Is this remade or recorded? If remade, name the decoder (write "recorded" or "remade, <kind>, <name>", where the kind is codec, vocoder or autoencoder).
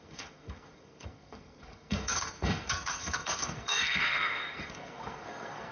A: remade, codec, SNAC